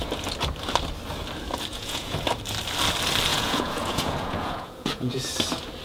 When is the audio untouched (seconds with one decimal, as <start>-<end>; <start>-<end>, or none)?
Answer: 0.0-1.7; 2.2-3.3; 5.3-5.8